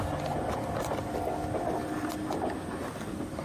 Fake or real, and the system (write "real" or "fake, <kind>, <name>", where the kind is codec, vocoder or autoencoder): real